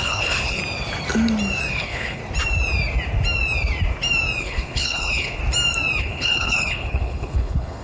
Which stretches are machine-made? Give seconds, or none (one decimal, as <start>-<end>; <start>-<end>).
0.0-0.6; 1.7-2.2; 4.4-5.4; 6.0-7.8